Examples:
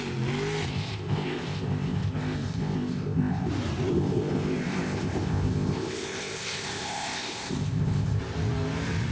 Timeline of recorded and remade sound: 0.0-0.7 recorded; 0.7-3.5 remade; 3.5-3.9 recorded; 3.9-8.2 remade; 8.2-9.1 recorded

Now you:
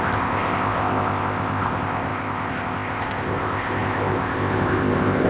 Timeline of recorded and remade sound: 0.0-5.3 remade

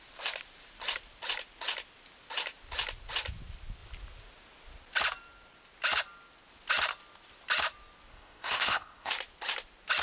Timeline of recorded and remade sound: 0.0-8.1 recorded; 8.1-9.1 remade; 9.1-10.0 recorded

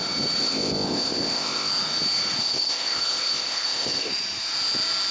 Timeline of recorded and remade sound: 0.0-0.4 recorded; 0.4-1.7 remade; 1.7-2.4 recorded; 2.4-4.1 remade; 4.1-5.1 recorded

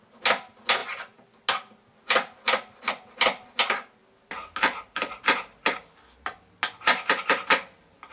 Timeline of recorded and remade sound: 0.0-8.1 recorded

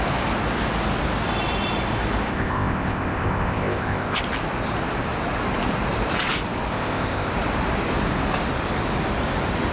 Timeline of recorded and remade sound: 0.0-2.3 recorded; 2.3-4.2 remade; 4.2-6.7 recorded; 6.7-7.3 remade; 7.3-9.7 recorded

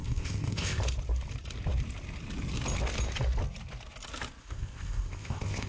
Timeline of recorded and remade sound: 0.0-0.8 remade; 0.8-4.4 recorded; 4.4-5.7 remade

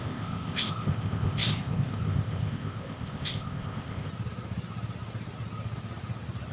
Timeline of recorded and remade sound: 0.0-4.1 remade; 4.1-6.5 recorded